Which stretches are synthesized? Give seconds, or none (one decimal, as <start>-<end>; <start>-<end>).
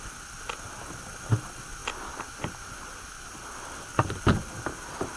none